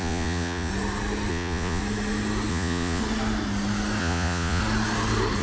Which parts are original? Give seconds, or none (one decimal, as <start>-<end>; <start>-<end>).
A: 0.7-1.3; 1.8-2.5; 3.0-4.0; 4.6-5.4